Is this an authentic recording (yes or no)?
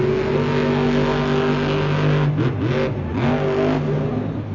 yes